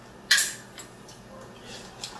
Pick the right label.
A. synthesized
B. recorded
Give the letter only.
B